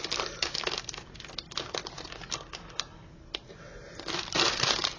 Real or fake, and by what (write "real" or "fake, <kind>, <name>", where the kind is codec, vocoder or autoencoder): real